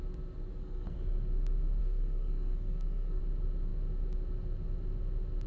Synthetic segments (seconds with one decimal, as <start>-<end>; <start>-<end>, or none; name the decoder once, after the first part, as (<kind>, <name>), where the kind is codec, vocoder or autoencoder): 0.5-1.0 (codec, SNAC); 1.8-3.2